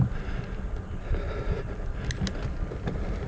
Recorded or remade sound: recorded